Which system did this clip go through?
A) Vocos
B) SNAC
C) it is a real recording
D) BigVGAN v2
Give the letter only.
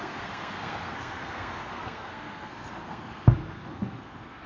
B